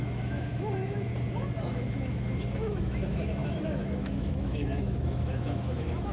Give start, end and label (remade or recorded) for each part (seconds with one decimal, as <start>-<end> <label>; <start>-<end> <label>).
0.0-1.1 remade; 1.1-1.7 recorded; 1.7-6.1 remade